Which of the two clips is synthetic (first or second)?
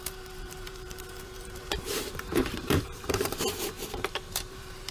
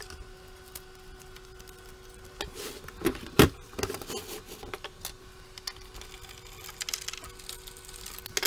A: first